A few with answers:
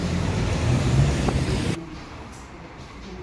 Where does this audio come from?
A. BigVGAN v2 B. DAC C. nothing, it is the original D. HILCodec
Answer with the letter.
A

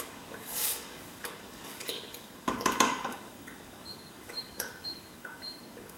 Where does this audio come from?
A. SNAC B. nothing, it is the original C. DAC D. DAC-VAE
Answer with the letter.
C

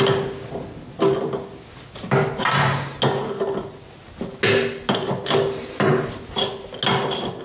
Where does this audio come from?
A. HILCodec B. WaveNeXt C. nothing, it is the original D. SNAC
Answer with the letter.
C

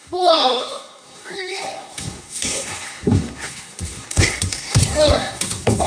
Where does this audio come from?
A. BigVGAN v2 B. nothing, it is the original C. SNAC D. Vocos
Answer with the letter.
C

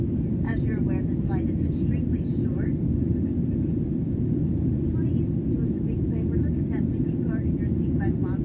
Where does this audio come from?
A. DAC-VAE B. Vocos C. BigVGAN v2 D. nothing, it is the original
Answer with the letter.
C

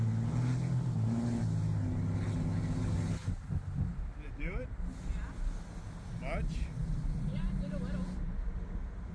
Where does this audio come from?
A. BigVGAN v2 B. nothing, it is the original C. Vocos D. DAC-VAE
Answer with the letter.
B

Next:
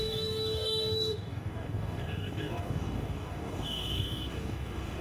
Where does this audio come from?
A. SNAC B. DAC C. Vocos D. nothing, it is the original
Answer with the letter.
B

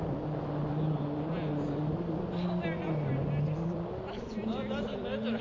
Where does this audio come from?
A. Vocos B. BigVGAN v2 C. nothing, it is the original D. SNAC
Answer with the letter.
C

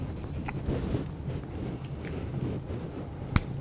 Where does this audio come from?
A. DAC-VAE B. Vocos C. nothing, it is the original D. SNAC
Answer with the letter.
C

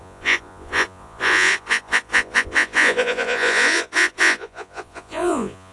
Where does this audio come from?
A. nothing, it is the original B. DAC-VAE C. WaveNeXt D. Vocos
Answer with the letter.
D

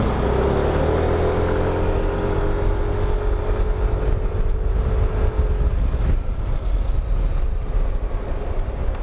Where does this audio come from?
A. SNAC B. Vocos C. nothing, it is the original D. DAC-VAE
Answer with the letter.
C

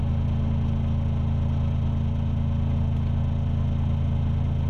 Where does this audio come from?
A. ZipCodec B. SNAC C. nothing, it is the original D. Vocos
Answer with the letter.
C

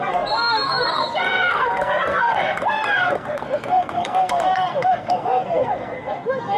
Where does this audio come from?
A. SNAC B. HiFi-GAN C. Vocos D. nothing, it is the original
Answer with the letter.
A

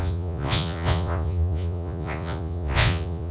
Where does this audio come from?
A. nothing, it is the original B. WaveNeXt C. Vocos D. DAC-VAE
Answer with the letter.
C